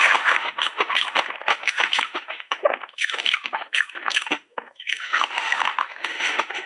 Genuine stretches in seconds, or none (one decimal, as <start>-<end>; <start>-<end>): none